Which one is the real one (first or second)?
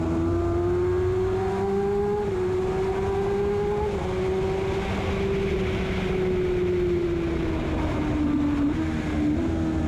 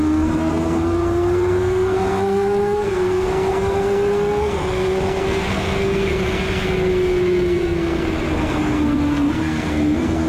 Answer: first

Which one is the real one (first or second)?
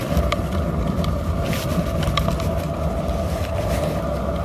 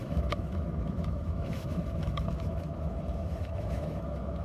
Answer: first